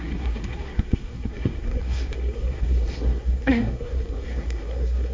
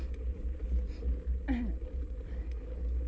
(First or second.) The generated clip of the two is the first